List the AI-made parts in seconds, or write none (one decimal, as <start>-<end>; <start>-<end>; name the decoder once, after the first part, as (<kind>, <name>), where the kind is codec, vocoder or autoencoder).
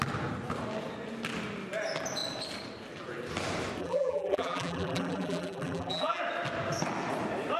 3.8-6.2 (vocoder, BigVGAN v2)